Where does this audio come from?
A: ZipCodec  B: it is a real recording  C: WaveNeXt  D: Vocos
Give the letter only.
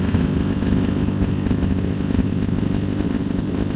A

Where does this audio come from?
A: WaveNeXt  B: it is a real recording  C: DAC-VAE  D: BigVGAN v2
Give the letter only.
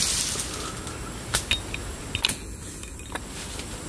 B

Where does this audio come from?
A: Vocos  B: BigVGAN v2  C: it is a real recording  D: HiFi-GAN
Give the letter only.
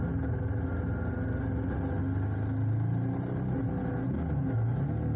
C